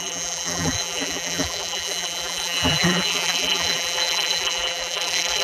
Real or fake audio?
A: fake